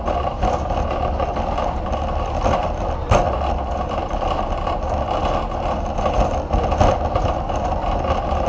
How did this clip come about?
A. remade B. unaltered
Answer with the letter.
B